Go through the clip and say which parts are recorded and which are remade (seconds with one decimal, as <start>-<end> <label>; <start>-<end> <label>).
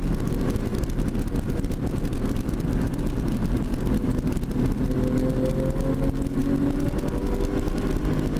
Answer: 0.0-8.4 recorded